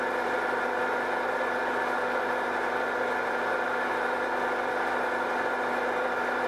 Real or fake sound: real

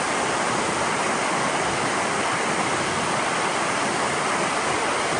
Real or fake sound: real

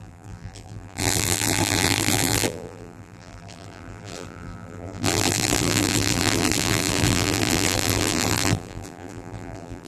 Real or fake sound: fake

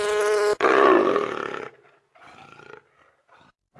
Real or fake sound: real